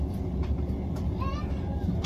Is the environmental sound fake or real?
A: real